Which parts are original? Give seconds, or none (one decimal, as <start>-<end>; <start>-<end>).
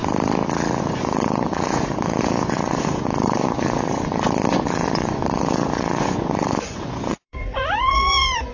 0.0-0.8